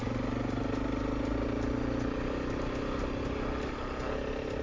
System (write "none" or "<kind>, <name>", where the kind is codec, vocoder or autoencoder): none